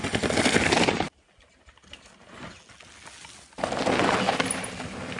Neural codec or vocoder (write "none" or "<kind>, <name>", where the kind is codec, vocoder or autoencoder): none